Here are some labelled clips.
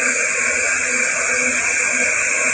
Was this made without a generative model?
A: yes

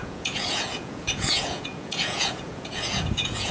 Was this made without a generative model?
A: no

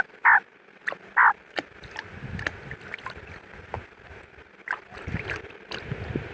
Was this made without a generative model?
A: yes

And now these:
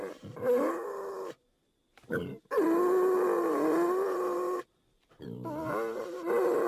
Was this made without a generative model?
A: yes